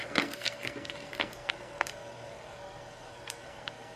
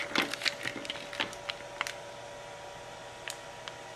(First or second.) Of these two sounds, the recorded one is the second